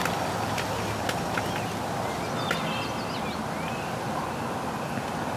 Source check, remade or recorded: recorded